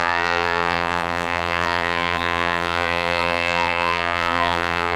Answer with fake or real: fake